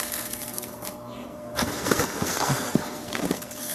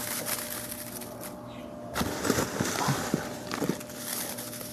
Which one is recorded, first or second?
second